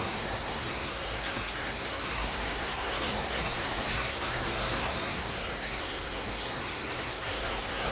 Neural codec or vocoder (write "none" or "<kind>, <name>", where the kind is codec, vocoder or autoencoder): codec, SNAC